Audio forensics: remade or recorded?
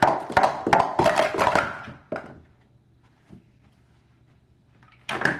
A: recorded